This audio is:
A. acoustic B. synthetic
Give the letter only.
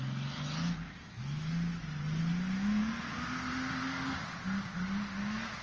A